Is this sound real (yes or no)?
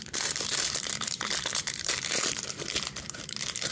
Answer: no